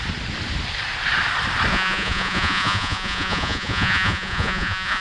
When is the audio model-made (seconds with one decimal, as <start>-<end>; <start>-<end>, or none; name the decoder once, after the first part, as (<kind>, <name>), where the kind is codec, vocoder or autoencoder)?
1.7-5.0 (vocoder, Vocos)